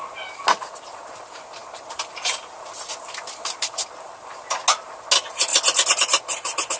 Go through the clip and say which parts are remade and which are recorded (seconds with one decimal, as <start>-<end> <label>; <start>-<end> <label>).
0.0-6.8 recorded